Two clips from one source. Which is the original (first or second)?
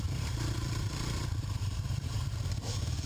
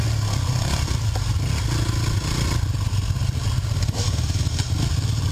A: second